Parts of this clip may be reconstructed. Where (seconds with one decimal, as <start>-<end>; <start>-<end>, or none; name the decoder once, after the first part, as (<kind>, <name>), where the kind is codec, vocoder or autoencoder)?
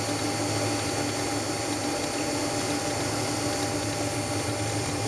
none